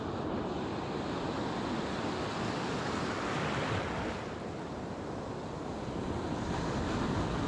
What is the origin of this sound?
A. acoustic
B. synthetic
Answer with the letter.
A